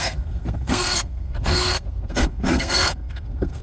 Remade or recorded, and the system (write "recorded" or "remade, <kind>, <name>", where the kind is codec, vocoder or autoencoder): remade, codec, SNAC